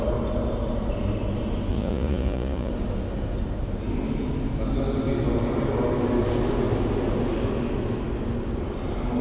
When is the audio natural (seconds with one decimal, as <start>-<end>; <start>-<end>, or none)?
0.0-1.7; 2.7-9.2